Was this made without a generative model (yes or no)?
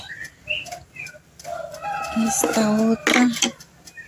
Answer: yes